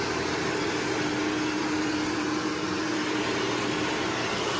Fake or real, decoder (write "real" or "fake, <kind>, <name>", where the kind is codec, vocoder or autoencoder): real